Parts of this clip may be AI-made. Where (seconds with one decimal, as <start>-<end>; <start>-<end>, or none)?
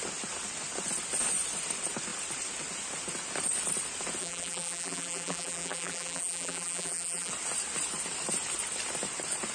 4.2-7.3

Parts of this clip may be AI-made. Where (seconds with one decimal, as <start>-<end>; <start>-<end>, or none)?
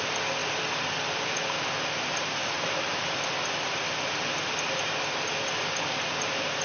0.4-1.4; 2.4-3.3